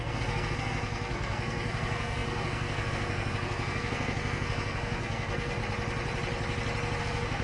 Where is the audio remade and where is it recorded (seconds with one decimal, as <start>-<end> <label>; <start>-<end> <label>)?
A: 0.0-5.6 remade; 5.6-7.0 recorded; 7.0-7.4 remade